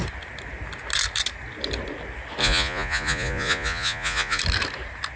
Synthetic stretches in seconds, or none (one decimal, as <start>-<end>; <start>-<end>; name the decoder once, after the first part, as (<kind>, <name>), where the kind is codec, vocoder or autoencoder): 2.4-4.4 (vocoder, Vocos)